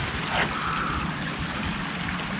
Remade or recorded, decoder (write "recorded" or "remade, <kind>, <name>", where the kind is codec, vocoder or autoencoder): recorded